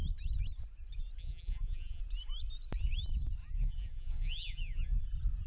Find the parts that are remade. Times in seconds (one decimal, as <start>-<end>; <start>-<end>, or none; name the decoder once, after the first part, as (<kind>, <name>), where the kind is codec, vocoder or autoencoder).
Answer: 1.2-2.0 (vocoder, BigVGAN v2); 3.4-5.0